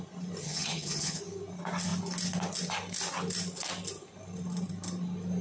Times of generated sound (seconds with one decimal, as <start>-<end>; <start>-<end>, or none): 0.4-1.2